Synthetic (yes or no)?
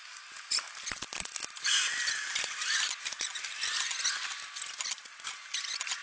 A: no